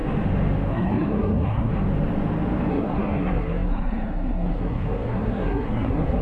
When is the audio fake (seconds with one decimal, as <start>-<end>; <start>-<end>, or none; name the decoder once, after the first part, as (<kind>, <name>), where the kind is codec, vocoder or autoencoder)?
0.7-1.7 (codec, SNAC); 2.7-6.2